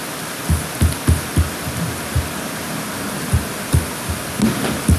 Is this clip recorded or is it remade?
recorded